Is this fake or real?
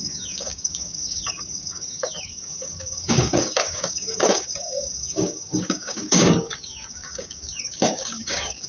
fake